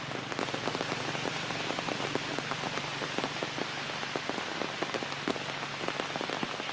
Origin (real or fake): real